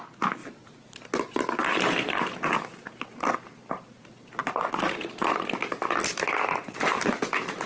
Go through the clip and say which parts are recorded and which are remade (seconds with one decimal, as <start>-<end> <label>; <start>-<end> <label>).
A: 0.0-7.7 recorded